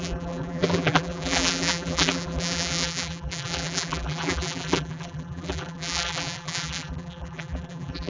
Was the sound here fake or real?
fake